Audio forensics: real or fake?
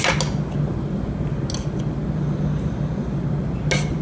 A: real